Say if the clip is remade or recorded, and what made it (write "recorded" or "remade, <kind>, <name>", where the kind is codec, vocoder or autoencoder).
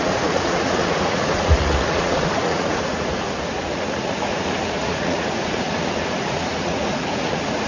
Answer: remade, vocoder, Vocos